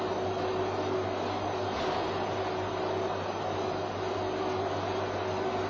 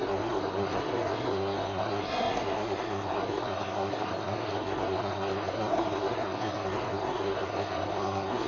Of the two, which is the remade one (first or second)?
second